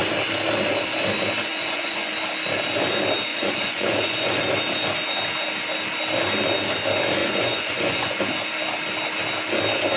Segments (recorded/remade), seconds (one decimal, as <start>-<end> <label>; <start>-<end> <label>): 0.0-1.5 recorded; 1.5-2.1 remade; 2.1-3.3 recorded; 3.3-4.4 remade; 4.4-7.2 recorded; 7.2-8.2 remade; 8.2-10.0 recorded